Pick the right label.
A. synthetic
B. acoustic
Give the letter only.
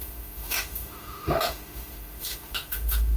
A